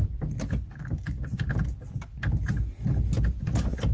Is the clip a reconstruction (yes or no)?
no